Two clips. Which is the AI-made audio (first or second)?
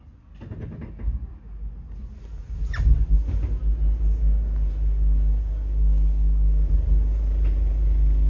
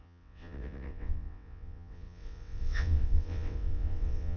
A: second